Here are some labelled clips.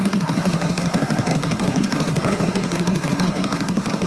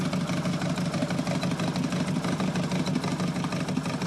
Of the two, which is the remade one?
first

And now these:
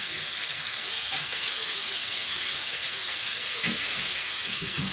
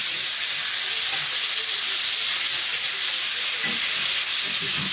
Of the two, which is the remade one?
first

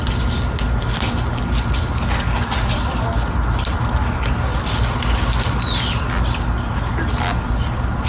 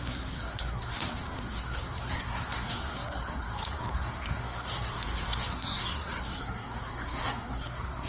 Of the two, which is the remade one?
second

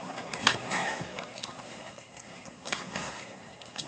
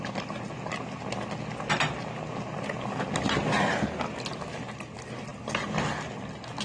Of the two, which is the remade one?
first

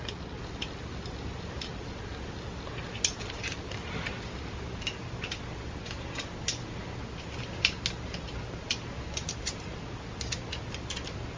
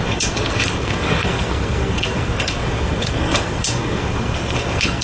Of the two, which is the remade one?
second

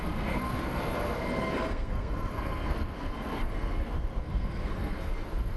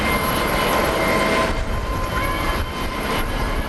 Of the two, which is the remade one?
first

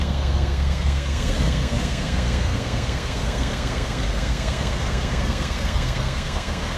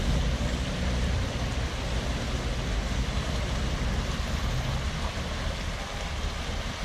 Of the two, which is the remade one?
first